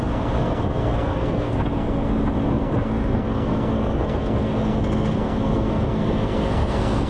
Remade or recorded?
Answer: remade